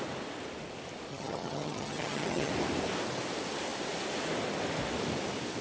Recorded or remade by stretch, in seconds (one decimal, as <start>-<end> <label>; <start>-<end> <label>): 0.0-1.1 recorded; 1.1-2.5 remade; 2.5-5.6 recorded